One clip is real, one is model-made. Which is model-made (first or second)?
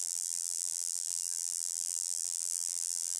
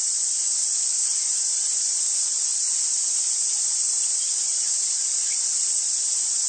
first